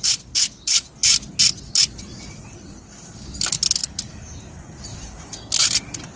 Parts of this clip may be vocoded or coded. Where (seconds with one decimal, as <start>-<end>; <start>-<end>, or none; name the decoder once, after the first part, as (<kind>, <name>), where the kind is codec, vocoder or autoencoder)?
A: none

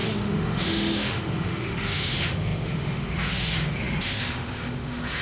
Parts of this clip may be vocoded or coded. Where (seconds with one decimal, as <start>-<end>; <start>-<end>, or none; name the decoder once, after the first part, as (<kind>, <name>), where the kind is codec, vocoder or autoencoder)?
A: 0.0-5.2 (autoencoder, DAC-VAE)

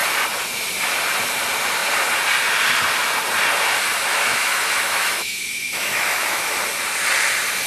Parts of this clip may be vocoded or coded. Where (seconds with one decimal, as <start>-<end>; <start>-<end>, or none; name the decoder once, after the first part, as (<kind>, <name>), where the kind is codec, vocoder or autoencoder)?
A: 4.1-6.6 (autoencoder, DAC-VAE)

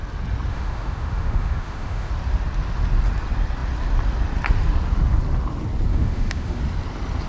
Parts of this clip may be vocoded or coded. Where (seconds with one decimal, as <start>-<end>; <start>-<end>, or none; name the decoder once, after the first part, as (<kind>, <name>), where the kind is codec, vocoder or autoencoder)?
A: 0.5-2.1 (autoencoder, DAC-VAE); 5.9-6.6